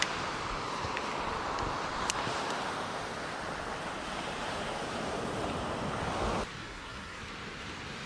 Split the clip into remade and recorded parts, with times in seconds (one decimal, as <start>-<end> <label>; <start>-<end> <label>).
0.0-6.6 recorded; 6.6-7.2 remade; 7.2-8.1 recorded